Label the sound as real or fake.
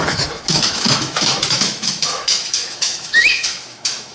fake